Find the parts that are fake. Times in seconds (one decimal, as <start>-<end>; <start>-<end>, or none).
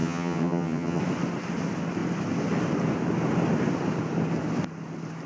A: 0.0-1.0